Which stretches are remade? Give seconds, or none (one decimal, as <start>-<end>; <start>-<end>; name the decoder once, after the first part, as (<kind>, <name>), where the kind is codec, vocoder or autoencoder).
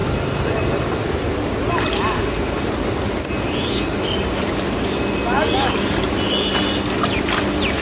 0.0-2.3 (vocoder, BigVGAN v2)